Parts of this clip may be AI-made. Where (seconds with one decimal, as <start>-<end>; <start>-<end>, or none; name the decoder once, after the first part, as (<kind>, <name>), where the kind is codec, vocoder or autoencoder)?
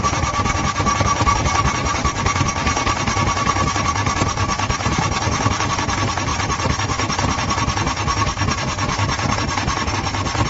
1.8-5.7 (vocoder, BigVGAN v2)